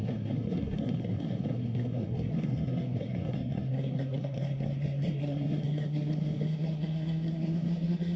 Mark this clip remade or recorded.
remade